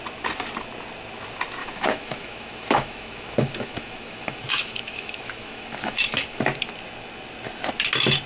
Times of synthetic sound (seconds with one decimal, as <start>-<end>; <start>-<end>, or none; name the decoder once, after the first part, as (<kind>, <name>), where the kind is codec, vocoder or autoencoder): 1.6-6.4 (autoencoder, DAC-VAE)